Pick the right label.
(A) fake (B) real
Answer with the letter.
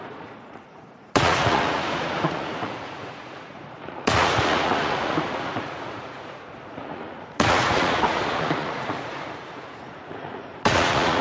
A